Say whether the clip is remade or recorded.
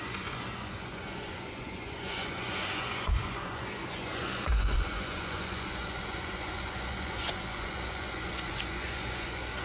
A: remade